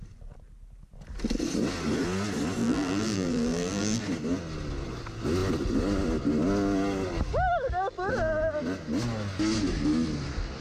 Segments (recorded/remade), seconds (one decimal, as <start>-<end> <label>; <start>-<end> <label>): 0.0-2.6 recorded; 2.6-4.0 remade; 4.0-10.6 recorded